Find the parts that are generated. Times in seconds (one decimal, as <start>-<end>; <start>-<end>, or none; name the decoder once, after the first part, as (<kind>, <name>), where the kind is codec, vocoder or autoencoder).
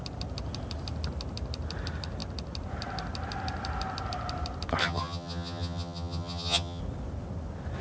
4.8-6.8 (vocoder, HiFi-GAN)